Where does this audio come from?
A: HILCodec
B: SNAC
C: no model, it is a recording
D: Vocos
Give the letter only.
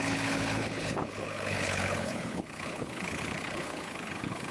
A